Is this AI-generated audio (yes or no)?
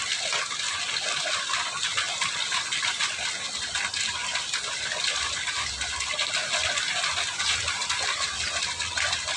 no